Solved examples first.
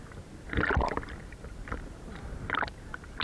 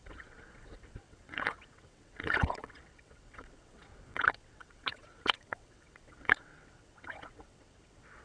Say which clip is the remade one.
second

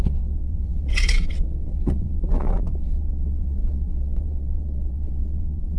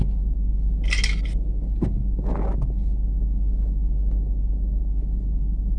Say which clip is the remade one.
first